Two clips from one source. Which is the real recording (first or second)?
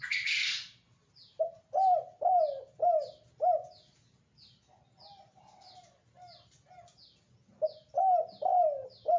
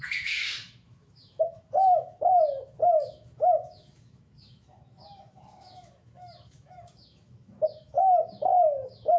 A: first